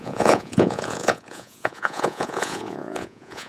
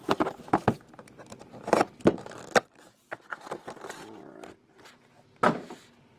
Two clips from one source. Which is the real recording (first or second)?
second